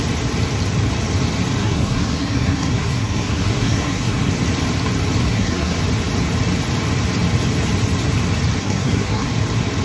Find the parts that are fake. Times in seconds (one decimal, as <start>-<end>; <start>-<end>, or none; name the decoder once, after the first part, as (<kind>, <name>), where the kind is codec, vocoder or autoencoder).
1.6-4.3 (codec, SNAC); 5.2-5.8; 8.6-9.3